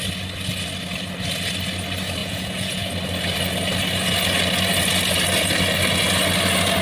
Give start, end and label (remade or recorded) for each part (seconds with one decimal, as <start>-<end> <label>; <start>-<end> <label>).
0.0-2.2 recorded; 2.2-2.9 remade; 2.9-6.8 recorded